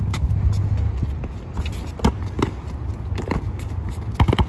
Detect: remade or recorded recorded